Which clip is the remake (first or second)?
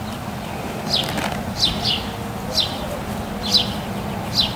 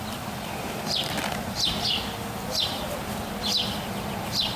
second